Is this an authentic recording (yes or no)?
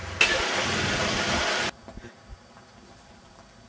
yes